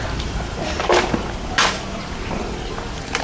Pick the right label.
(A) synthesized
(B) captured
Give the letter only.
A